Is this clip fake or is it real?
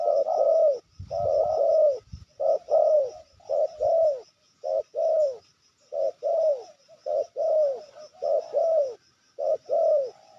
real